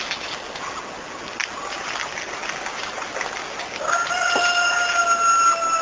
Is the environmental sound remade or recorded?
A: recorded